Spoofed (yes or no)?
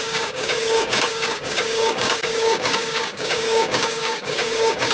yes